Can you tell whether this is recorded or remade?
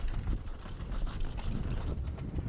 recorded